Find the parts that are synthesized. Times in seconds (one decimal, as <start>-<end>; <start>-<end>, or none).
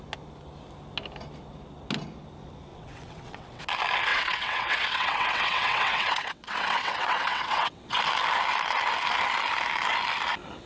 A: 2.7-3.6; 4.1-8.0